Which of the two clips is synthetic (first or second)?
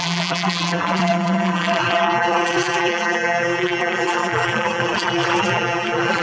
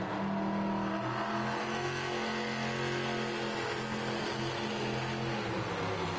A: first